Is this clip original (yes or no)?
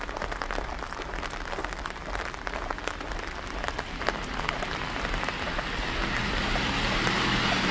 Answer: yes